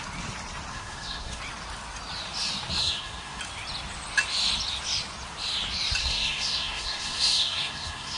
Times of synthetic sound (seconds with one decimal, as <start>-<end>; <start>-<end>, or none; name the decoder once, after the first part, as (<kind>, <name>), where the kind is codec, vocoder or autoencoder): 0.7-1.4 (codec, SNAC); 2.8-3.4; 6.0-8.2